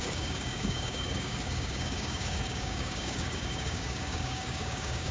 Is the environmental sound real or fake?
fake